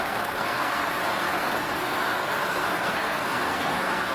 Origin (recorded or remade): remade